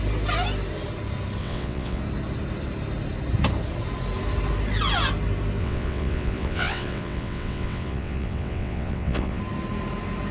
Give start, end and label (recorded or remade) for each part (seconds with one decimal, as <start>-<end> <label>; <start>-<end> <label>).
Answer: 0.0-1.4 recorded; 1.4-2.0 remade; 2.0-5.6 recorded; 5.6-9.4 remade; 9.4-10.3 recorded